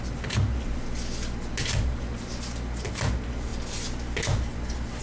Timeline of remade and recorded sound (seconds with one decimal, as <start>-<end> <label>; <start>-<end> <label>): 0.0-5.0 recorded